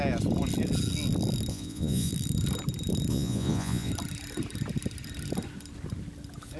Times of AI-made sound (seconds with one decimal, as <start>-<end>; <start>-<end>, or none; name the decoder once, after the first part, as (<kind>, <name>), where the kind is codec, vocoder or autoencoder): 1.5-2.1 (vocoder, Vocos); 3.1-3.9